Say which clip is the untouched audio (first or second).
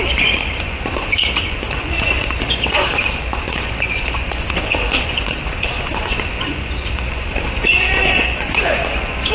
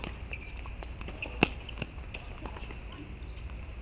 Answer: second